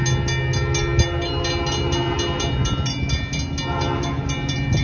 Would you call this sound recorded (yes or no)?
yes